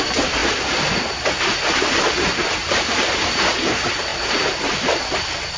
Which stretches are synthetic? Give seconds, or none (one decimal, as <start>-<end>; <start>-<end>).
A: 0.4-1.3; 2.6-3.5; 4.1-5.1